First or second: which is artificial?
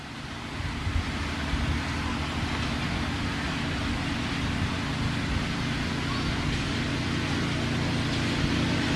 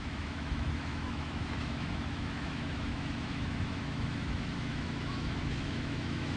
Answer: second